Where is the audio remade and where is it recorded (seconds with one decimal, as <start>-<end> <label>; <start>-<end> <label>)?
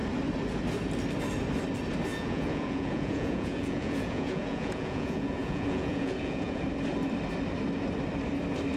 0.0-2.1 recorded; 2.1-6.6 remade; 6.6-8.8 recorded